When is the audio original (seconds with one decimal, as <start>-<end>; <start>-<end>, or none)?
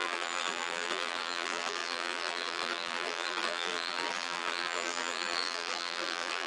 none